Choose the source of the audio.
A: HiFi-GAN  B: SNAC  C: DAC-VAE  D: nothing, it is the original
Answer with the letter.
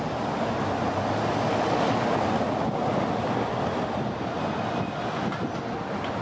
D